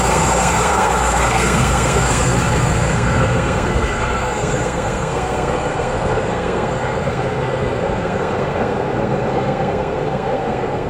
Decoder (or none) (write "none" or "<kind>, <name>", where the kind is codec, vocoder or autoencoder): codec, SNAC